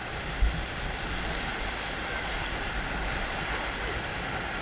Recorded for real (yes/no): yes